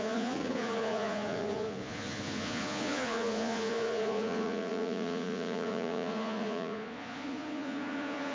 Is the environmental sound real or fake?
fake